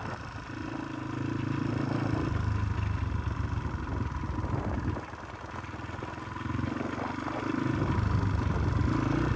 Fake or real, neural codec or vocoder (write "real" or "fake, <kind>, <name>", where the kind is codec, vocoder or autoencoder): real